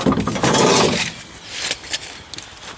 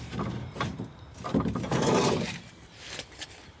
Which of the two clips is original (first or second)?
first